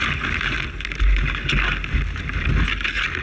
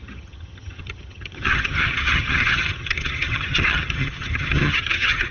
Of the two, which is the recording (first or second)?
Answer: first